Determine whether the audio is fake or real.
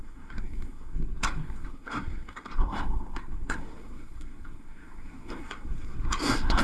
fake